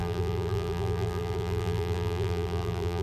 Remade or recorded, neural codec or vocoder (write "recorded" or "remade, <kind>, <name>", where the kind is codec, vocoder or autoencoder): remade, vocoder, BigVGAN v2